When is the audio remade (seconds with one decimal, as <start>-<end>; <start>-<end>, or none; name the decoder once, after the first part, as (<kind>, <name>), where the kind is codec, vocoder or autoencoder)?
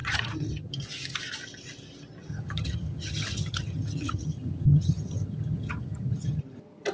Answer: 0.0-0.7 (vocoder, HiFi-GAN); 2.3-6.4